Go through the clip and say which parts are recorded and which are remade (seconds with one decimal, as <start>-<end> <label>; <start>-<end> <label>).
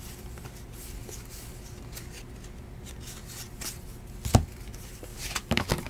0.0-5.1 recorded; 5.1-5.9 remade